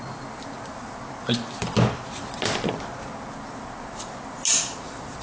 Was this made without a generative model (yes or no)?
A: yes